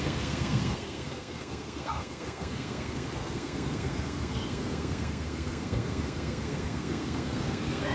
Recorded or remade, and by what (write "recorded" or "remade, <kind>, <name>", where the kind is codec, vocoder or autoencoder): remade, codec, SNAC